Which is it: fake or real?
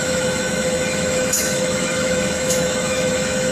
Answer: fake